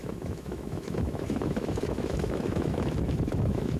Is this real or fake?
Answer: fake